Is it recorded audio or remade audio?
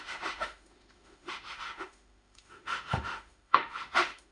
remade